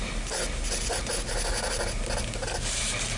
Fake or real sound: real